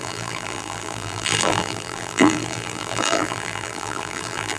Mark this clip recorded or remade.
remade